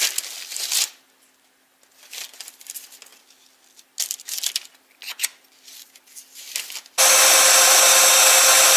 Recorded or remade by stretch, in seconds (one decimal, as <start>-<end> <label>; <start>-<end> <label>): 0.0-8.8 recorded